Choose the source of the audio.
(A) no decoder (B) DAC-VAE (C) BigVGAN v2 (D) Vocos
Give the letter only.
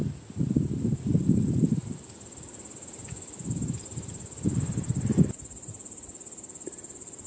A